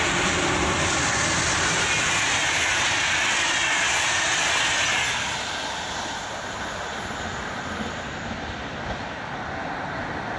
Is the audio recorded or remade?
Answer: recorded